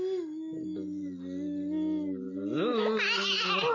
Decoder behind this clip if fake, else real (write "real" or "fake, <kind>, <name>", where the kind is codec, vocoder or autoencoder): real